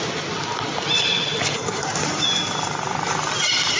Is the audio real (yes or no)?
yes